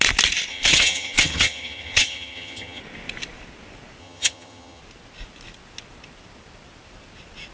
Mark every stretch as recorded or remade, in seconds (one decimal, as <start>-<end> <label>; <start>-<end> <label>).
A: 0.0-0.5 recorded; 0.5-2.8 remade; 2.8-4.0 recorded; 4.0-4.8 remade; 4.8-7.5 recorded